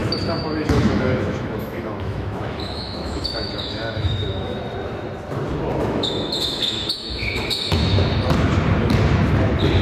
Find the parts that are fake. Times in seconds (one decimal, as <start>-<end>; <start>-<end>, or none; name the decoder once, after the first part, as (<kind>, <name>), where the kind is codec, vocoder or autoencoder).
0.0-4.6 (autoencoder, DAC-VAE); 5.7-8.1